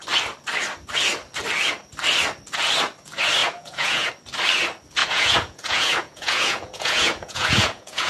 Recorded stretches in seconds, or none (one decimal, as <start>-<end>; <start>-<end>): 0.0-3.4; 4.1-5.0